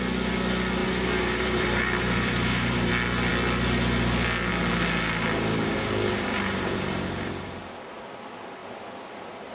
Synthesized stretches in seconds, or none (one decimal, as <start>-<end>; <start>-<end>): 0.8-2.9; 6.1-7.6